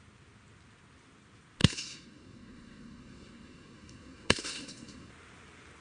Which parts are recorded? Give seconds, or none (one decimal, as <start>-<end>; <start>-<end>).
0.0-1.6; 5.1-5.8